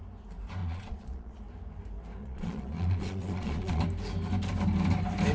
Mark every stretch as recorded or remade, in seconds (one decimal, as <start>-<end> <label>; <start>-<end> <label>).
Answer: 0.0-0.6 recorded; 0.6-1.4 remade; 1.4-2.2 recorded; 2.2-3.8 remade; 3.8-5.3 recorded